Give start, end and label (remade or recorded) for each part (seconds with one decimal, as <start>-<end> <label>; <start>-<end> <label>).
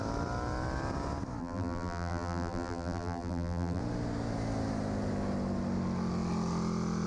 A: 0.0-1.4 recorded; 1.4-3.8 remade; 3.8-7.1 recorded